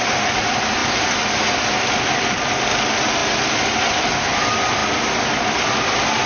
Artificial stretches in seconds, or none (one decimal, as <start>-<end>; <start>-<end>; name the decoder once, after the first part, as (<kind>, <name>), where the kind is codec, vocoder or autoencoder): none